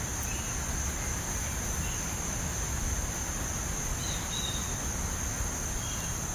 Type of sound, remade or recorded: recorded